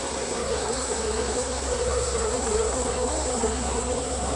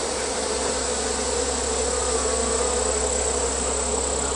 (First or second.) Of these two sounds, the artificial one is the first